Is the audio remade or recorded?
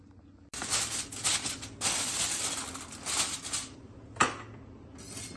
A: recorded